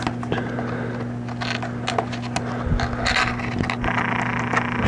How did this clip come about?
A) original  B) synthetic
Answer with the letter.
A